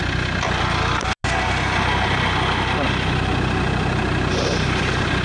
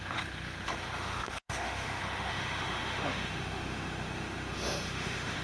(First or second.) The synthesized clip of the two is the second